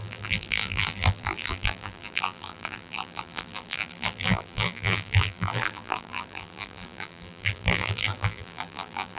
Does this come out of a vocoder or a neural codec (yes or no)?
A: yes